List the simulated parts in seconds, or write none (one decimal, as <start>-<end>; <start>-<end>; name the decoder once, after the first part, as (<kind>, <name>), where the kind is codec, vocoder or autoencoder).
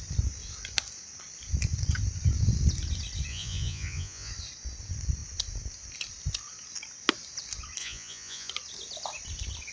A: 3.3-4.3 (vocoder, Vocos); 7.8-8.5